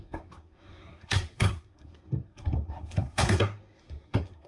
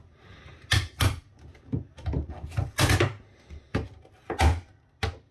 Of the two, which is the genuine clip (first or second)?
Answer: second